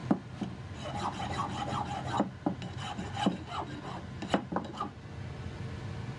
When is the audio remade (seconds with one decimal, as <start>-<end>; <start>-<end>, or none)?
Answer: none